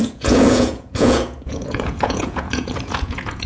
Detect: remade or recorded remade